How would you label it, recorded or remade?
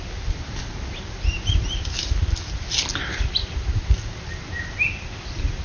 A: recorded